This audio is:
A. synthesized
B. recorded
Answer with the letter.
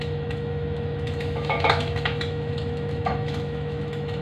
A